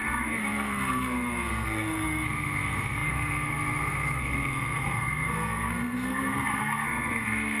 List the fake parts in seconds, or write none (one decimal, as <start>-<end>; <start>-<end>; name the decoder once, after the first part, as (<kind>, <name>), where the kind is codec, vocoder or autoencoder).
0.0-7.6 (codec, SNAC)